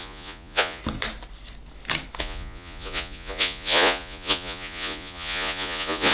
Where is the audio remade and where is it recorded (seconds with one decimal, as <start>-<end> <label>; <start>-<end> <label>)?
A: 0.0-0.8 remade; 0.8-2.2 recorded; 2.2-6.1 remade